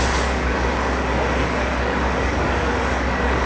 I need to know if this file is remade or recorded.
remade